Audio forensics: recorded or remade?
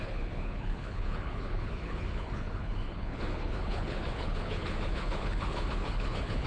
remade